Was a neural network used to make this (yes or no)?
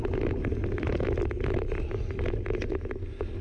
no